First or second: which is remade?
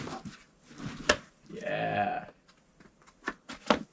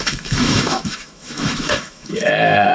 second